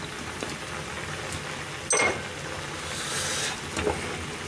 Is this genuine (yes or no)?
yes